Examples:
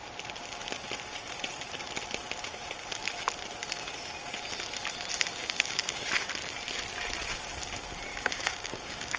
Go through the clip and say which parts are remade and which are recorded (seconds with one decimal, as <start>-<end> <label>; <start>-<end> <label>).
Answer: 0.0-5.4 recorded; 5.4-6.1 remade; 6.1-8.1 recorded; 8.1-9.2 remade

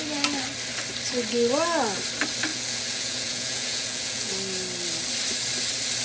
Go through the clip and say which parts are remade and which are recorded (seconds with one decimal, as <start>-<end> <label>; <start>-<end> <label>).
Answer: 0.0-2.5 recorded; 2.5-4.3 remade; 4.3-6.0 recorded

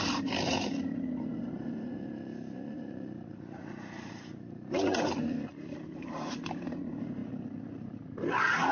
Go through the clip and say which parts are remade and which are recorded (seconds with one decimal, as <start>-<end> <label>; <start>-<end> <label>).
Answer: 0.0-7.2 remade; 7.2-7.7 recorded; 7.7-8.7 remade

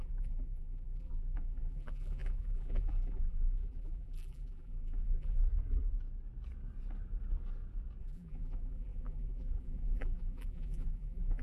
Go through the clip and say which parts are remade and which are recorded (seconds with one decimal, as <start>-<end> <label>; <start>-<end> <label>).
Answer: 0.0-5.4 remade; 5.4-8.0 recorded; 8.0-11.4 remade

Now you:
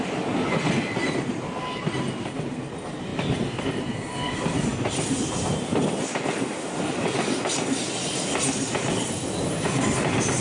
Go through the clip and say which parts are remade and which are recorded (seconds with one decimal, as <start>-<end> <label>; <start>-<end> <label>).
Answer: 0.0-10.4 recorded

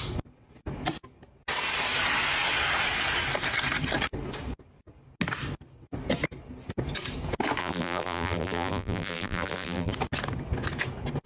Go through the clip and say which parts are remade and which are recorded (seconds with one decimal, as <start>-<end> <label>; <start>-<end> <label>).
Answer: 0.0-7.6 recorded; 7.6-9.9 remade; 9.9-11.3 recorded

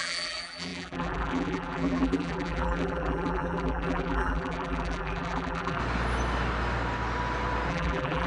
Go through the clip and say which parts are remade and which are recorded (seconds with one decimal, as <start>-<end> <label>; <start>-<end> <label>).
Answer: 0.0-5.8 remade; 5.8-7.7 recorded; 7.7-8.3 remade